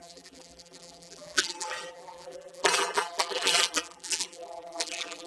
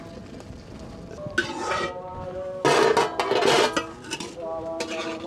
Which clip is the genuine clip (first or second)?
second